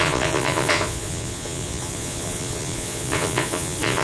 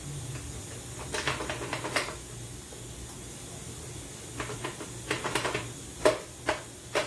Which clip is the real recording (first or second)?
second